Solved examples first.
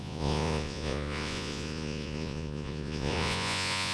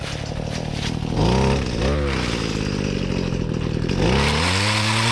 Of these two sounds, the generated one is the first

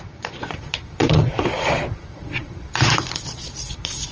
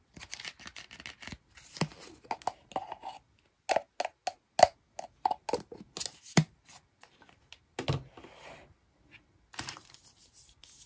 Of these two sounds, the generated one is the first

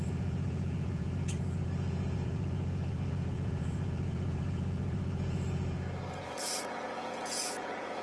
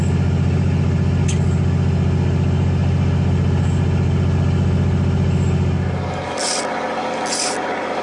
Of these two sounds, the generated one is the first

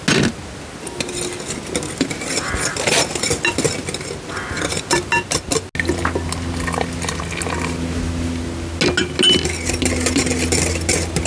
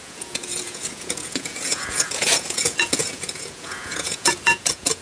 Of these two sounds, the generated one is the second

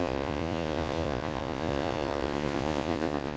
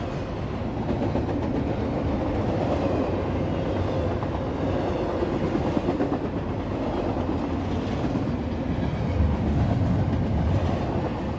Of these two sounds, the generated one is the first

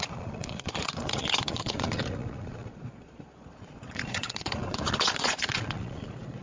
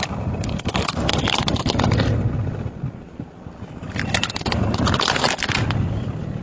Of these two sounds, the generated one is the first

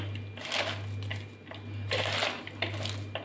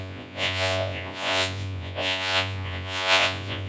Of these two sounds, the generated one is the second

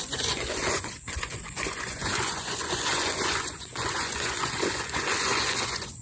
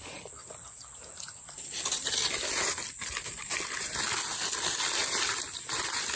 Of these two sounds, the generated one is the first